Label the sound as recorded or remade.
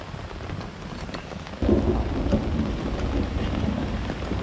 recorded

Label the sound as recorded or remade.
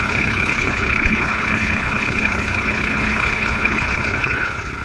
remade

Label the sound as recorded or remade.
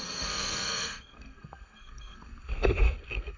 remade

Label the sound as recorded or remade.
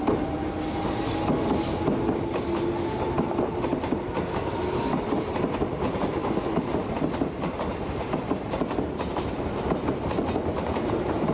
recorded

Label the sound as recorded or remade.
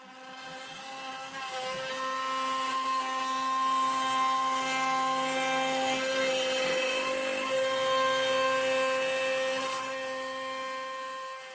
recorded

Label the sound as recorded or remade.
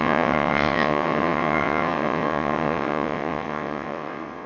remade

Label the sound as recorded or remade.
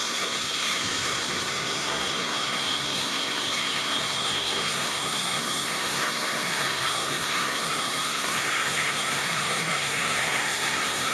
remade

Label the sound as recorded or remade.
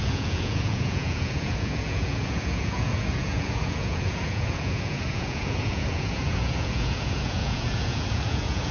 remade